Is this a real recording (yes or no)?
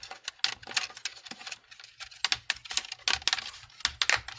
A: yes